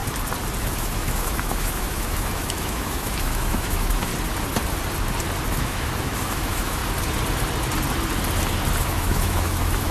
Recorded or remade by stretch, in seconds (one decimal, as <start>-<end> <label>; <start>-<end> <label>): 0.0-0.6 recorded; 0.6-4.1 remade; 4.1-5.5 recorded; 5.5-6.8 remade; 6.8-8.8 recorded; 8.8-9.9 remade